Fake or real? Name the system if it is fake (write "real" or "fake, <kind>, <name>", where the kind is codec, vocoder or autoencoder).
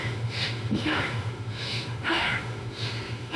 fake, autoencoder, DAC-VAE